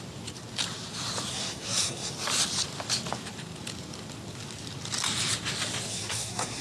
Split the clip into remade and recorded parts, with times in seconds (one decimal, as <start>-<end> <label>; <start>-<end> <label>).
0.0-1.3 recorded; 1.3-2.1 remade; 2.1-5.9 recorded; 5.9-6.6 remade

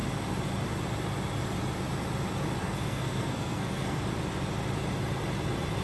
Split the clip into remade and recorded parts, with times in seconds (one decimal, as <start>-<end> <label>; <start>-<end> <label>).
0.0-2.6 recorded; 2.6-4.0 remade; 4.0-5.8 recorded

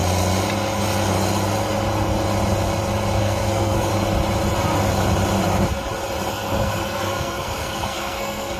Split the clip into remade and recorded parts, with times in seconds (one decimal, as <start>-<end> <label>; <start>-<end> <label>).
0.0-3.2 recorded; 3.2-3.9 remade; 3.9-6.3 recorded; 6.3-8.6 remade

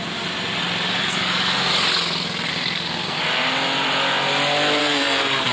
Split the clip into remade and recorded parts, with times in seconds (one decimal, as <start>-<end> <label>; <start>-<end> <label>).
0.0-0.9 recorded; 0.9-1.7 remade; 1.7-2.5 recorded; 2.5-3.2 remade; 3.2-4.8 recorded; 4.8-5.5 remade

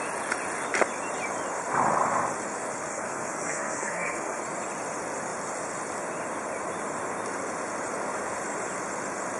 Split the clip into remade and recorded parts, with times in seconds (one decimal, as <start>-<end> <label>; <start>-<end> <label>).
0.0-2.9 recorded; 2.9-4.4 remade; 4.4-9.4 recorded

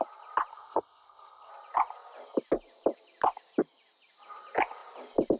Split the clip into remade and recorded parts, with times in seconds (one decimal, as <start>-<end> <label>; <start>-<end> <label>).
0.0-0.5 recorded; 0.5-1.5 remade; 1.5-5.4 recorded